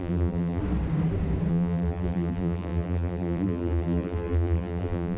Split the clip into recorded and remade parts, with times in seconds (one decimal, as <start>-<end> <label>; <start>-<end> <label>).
0.0-0.6 remade; 0.6-1.5 recorded; 1.5-5.2 remade